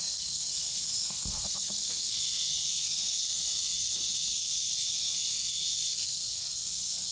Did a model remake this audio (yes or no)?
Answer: yes